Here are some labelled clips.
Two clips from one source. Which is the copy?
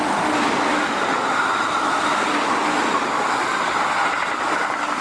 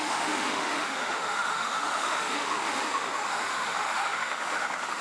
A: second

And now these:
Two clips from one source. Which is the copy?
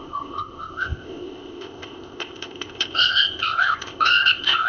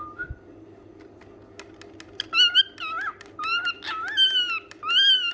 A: first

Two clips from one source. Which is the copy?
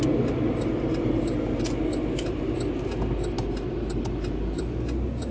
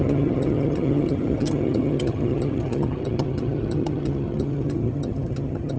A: second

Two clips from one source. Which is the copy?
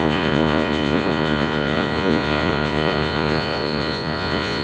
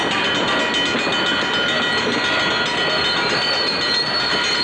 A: first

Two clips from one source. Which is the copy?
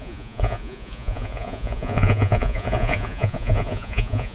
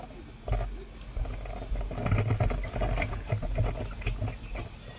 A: first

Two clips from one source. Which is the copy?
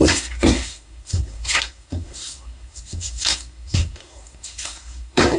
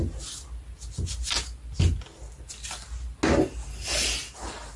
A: first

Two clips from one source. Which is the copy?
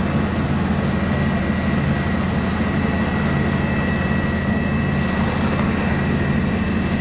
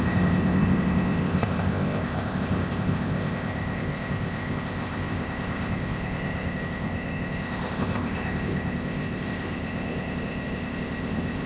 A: second